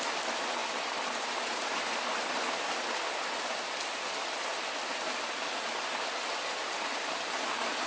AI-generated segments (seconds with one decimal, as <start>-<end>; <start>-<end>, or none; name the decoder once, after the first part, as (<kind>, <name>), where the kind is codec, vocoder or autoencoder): none